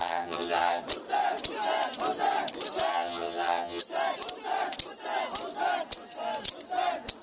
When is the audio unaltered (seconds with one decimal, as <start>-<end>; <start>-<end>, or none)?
0.8-2.9; 3.8-7.2